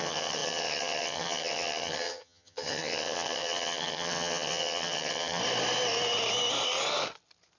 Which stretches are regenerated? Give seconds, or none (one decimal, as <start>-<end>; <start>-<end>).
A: 0.0-5.4